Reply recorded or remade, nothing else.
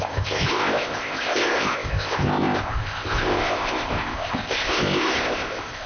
remade